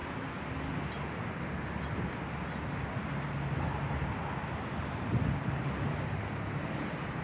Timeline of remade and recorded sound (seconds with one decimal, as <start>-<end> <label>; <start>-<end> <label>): 0.0-7.2 recorded